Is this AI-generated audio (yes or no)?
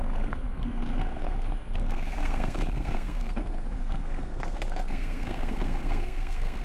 yes